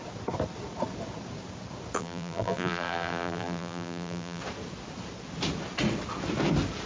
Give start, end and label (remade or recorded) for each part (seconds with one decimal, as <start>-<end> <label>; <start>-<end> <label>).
0.0-2.0 recorded; 2.0-4.4 remade; 4.4-6.9 recorded